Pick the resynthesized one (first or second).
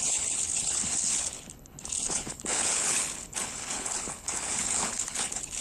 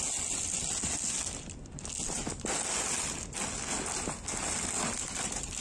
first